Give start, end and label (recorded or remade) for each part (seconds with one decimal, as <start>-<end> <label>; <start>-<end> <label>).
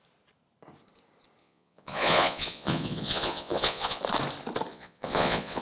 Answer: 0.0-1.4 recorded; 1.4-4.0 remade; 4.0-4.7 recorded; 4.7-5.6 remade